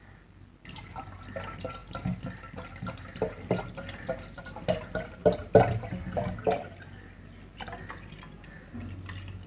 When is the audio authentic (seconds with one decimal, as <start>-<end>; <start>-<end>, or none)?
0.0-9.5